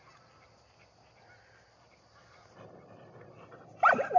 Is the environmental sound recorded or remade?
recorded